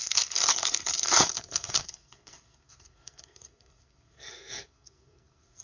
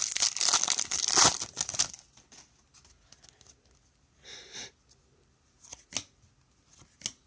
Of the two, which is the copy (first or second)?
first